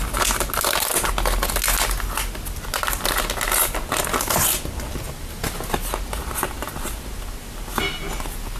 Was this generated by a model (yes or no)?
no